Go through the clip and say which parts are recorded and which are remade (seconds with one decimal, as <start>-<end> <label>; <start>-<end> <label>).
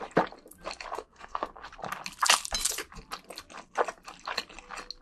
0.0-0.9 recorded; 0.9-1.5 remade; 1.5-5.0 recorded